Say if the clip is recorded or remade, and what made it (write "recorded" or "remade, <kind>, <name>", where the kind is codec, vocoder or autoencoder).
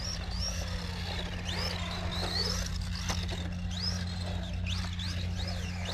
recorded